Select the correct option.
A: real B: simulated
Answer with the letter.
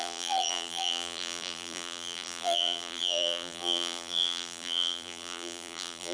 B